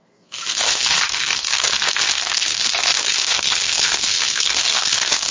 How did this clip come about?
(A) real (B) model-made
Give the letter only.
B